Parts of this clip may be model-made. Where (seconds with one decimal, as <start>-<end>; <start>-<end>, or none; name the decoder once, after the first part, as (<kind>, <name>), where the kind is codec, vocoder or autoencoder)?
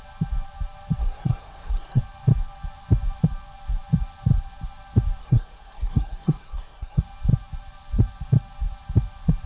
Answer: 1.0-2.0 (codec, SNAC); 5.2-7.0